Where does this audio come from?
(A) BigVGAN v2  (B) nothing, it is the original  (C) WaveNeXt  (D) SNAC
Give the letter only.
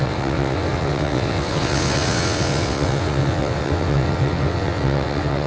C